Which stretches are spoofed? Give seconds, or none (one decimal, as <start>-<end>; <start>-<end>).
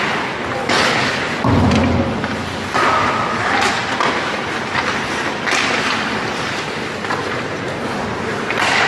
0.6-1.2